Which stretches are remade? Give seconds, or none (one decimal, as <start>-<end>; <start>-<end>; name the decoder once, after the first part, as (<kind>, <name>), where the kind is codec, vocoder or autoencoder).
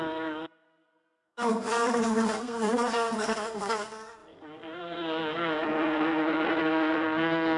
0.0-7.6 (codec, SNAC)